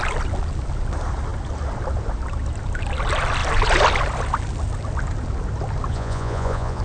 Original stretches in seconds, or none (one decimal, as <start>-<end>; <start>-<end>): 0.0-5.9